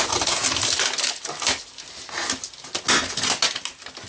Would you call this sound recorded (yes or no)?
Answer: yes